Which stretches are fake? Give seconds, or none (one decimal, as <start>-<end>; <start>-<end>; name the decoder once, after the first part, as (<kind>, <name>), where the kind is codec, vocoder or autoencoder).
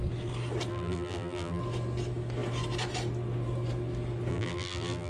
0.7-1.6 (vocoder, BigVGAN v2); 4.3-5.1